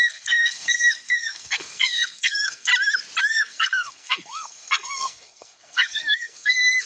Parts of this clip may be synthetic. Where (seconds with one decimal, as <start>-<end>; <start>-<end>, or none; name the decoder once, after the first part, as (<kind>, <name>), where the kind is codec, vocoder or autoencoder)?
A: 0.0-2.7 (codec, SNAC); 3.2-6.9